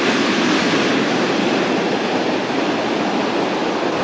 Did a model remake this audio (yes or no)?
no